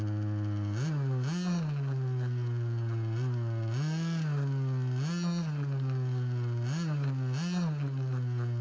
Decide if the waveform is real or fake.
real